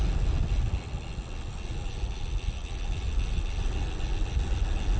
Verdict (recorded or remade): recorded